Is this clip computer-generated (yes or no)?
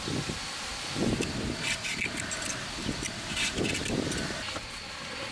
no